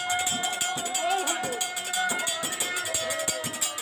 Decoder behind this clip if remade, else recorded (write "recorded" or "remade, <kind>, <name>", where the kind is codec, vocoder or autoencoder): recorded